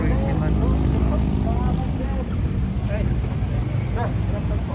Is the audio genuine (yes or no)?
yes